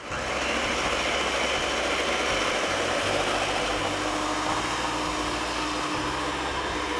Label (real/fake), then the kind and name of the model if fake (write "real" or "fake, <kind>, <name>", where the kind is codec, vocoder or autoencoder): real